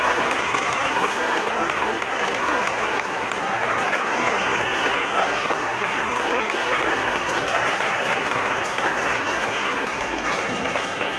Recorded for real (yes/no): no